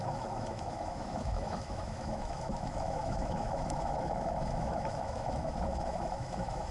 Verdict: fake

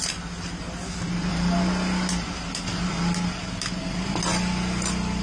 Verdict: real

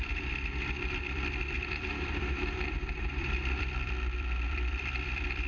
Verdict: fake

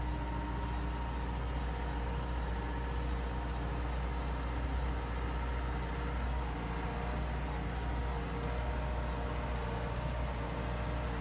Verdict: real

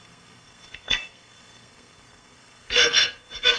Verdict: fake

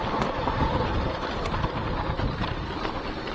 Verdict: real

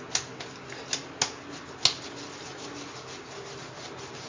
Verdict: real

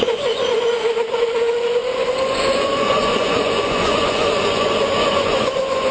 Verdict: fake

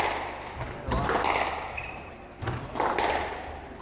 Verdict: real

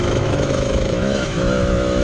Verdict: fake